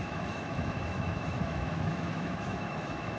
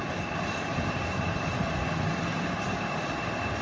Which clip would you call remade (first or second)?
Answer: first